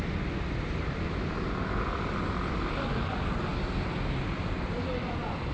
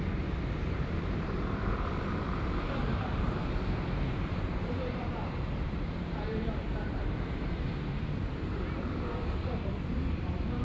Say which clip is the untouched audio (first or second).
first